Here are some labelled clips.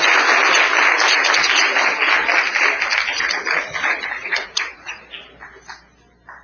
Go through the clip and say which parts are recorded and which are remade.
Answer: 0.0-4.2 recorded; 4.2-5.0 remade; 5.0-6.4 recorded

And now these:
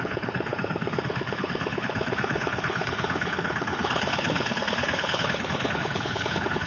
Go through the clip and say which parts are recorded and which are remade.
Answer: 0.0-6.7 remade

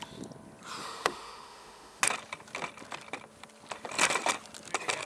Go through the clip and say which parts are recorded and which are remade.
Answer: 0.0-0.8 recorded; 0.8-2.0 remade; 2.0-5.0 recorded

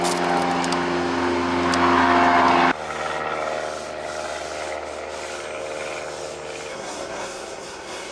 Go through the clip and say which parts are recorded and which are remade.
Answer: 0.0-6.7 recorded; 6.7-8.1 remade

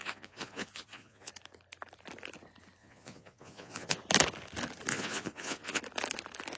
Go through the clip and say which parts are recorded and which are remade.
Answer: 0.0-1.3 remade; 1.3-2.8 recorded; 2.8-4.0 remade; 4.0-4.9 recorded; 4.9-5.8 remade; 5.8-6.6 recorded

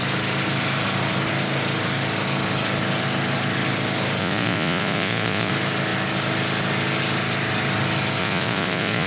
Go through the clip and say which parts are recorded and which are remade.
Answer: 0.0-4.2 recorded; 4.2-5.5 remade; 5.5-8.2 recorded; 8.2-9.1 remade

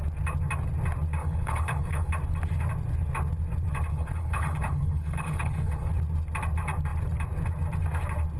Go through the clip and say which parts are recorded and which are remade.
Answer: 0.0-1.2 recorded; 1.2-2.1 remade; 2.1-3.9 recorded; 3.9-5.9 remade; 5.9-8.4 recorded

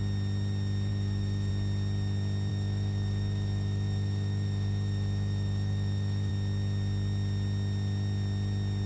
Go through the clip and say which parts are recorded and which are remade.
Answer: 0.0-0.9 recorded; 0.9-1.5 remade; 1.5-2.5 recorded; 2.5-6.3 remade; 6.3-8.9 recorded